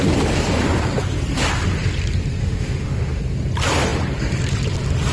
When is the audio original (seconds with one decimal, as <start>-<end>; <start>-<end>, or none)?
0.0-2.4; 3.2-5.1